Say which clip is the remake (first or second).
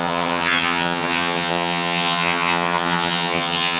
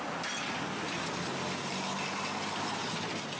first